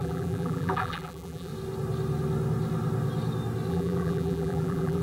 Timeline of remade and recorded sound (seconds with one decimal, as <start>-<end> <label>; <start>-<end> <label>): 0.0-1.5 remade; 1.5-3.7 recorded; 3.7-5.0 remade